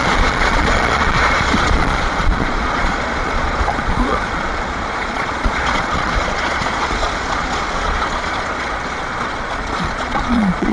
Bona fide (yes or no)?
no